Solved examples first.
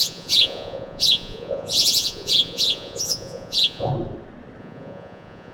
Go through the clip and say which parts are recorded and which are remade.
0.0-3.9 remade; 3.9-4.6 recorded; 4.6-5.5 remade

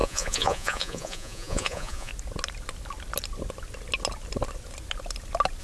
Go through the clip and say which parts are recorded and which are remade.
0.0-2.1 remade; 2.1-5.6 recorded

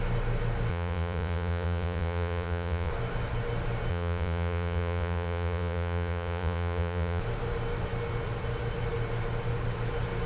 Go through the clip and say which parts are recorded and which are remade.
0.0-0.7 recorded; 0.7-2.9 remade; 2.9-3.9 recorded; 3.9-7.2 remade; 7.2-10.3 recorded

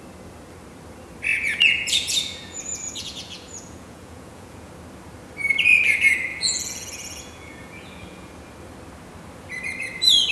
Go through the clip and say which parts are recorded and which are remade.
0.0-1.3 recorded; 1.3-4.7 remade; 4.7-6.3 recorded; 6.3-8.3 remade; 8.3-10.3 recorded